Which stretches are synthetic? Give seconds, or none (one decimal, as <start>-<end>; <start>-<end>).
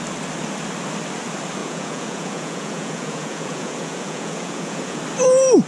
1.6-5.0